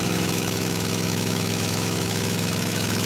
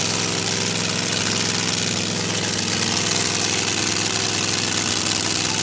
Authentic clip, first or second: second